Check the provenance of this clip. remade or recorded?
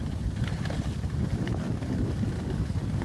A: recorded